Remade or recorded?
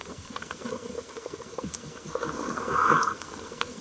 remade